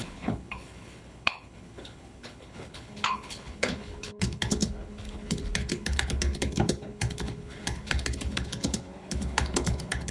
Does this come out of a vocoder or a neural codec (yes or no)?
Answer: yes